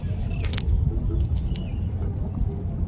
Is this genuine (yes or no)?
yes